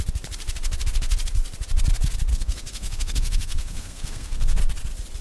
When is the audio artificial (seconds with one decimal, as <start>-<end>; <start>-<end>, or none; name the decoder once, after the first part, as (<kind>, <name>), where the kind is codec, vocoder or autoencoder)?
2.3-4.6 (codec, SNAC)